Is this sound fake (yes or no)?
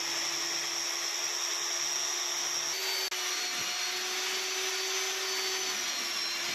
no